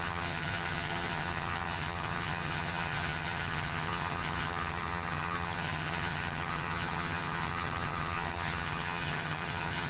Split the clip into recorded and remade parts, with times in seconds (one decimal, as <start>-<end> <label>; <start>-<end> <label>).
0.0-9.9 remade